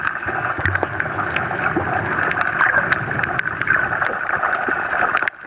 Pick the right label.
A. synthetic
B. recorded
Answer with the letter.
B